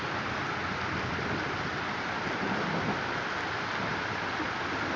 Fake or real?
real